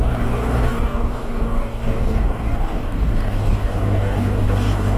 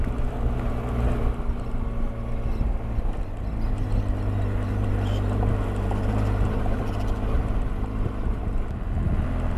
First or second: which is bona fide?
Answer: second